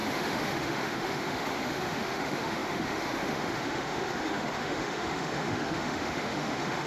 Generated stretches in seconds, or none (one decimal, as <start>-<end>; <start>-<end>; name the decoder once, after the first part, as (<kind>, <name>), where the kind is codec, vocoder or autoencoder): 0.0-6.9 (autoencoder, DAC-VAE)